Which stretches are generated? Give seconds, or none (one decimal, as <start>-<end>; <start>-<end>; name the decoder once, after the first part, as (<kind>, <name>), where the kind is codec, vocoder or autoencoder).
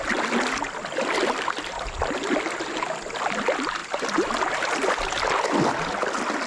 none